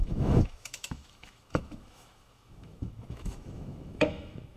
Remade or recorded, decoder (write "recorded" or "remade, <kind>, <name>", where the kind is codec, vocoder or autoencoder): remade, autoencoder, DAC-VAE